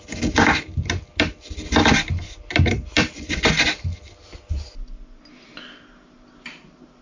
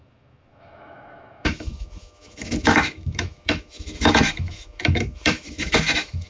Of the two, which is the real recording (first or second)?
first